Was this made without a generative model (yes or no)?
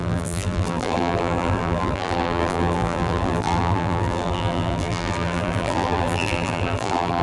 no